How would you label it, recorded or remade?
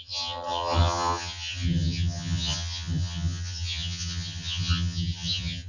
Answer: remade